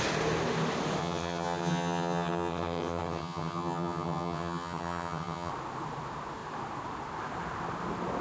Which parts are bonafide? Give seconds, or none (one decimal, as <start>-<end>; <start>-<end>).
0.0-1.0; 5.5-8.2